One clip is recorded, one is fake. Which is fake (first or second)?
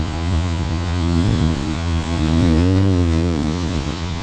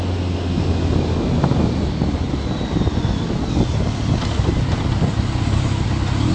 first